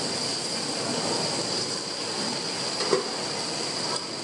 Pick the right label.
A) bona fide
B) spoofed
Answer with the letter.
A